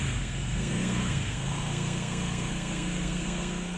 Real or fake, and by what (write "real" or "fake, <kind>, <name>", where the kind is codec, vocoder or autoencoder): fake, codec, SNAC